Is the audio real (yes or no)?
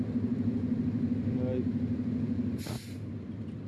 yes